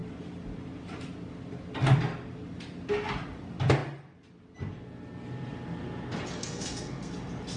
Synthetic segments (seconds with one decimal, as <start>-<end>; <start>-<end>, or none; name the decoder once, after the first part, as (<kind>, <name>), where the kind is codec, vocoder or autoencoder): 6.4-7.1 (codec, SNAC)